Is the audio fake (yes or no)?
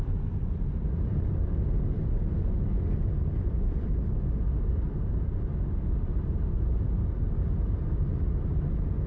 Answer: no